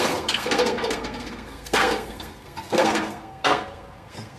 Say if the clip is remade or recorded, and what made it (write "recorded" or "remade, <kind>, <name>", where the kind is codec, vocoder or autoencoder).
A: remade, codec, SNAC